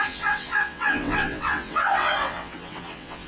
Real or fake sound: fake